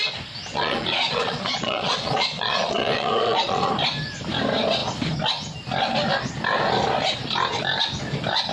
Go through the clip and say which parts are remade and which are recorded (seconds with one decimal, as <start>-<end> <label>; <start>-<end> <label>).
0.0-0.5 recorded; 0.5-3.7 remade; 3.7-8.5 recorded